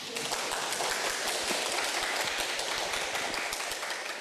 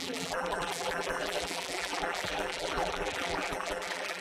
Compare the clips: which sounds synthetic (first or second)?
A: second